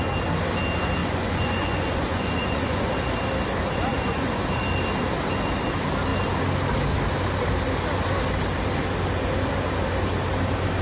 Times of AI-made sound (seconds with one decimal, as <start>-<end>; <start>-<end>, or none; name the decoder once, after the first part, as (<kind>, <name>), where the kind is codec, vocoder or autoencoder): 1.0-2.9 (vocoder, Vocos); 3.9-4.4